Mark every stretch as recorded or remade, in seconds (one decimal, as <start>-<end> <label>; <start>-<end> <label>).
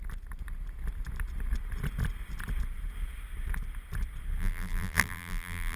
0.0-4.4 recorded; 4.4-5.8 remade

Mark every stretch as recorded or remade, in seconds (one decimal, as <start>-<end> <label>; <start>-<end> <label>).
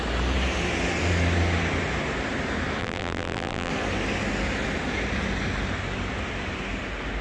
0.0-2.8 recorded; 2.8-3.7 remade; 3.7-7.2 recorded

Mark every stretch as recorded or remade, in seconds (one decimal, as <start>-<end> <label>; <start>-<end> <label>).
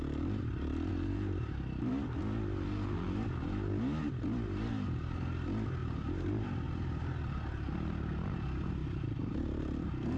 0.0-0.9 recorded; 0.9-1.9 remade; 1.9-5.8 recorded; 5.8-7.0 remade; 7.0-8.8 recorded; 8.8-9.6 remade; 9.6-10.2 recorded